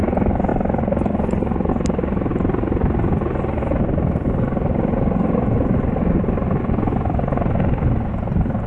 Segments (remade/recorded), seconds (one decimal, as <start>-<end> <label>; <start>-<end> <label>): 0.0-8.7 remade